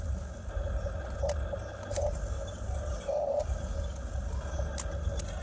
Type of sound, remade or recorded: recorded